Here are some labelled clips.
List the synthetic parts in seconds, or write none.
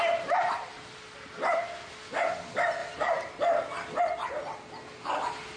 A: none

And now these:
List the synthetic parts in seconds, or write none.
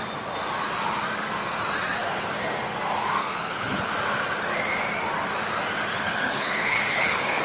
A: 3.2-3.9; 5.9-7.4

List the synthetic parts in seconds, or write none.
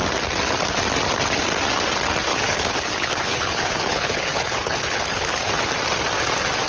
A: 2.3-5.5